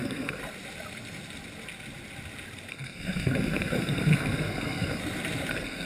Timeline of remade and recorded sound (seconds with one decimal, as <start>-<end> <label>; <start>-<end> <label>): 0.0-0.4 remade; 0.4-2.7 recorded; 2.7-5.0 remade; 5.0-5.5 recorded; 5.5-5.9 remade